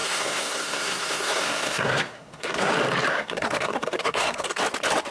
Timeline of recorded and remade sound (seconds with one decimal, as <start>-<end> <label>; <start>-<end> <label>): 0.0-2.7 remade; 2.7-3.1 recorded; 3.1-4.6 remade; 4.6-5.1 recorded